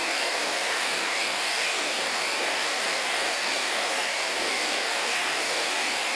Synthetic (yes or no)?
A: yes